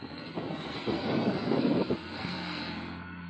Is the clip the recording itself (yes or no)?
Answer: no